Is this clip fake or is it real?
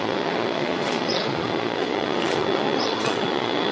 fake